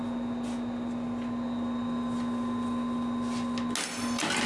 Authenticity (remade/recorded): recorded